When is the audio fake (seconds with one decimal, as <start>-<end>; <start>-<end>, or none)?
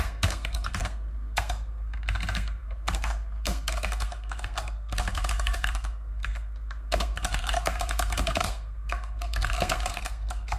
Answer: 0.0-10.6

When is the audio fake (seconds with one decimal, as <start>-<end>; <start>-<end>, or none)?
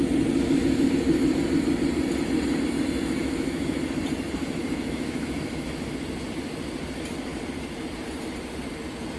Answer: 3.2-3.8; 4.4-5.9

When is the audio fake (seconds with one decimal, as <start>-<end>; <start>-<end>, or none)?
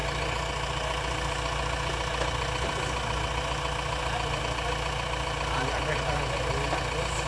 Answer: none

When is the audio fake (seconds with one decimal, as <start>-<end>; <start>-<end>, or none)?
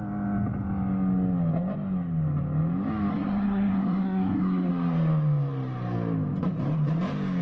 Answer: 3.1-4.7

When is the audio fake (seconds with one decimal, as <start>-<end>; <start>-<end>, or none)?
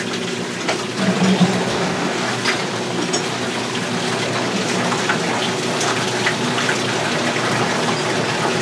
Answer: 1.7-2.3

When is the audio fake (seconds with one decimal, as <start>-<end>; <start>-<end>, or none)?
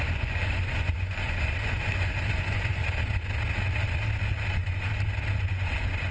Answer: 0.0-2.8; 4.5-4.9; 5.5-6.1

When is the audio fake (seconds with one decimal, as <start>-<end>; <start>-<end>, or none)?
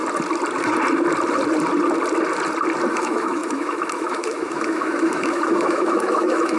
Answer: 2.9-6.6